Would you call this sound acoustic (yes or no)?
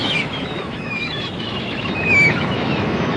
no